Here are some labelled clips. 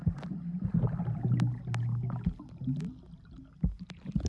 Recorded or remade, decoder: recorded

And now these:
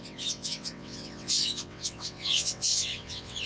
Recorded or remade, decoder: remade, vocoder, WaveNeXt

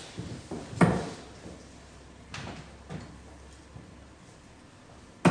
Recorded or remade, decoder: recorded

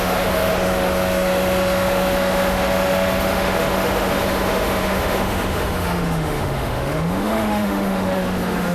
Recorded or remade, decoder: remade, autoencoder, DAC-VAE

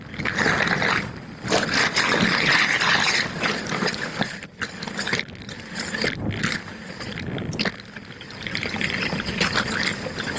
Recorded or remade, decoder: recorded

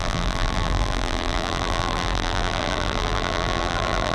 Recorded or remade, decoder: remade, vocoder, BigVGAN v2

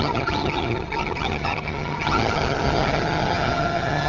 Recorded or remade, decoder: remade, vocoder, HiFi-GAN